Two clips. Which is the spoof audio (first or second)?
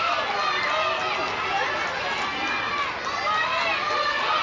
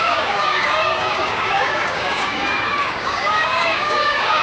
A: second